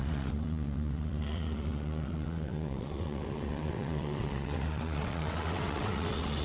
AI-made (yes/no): yes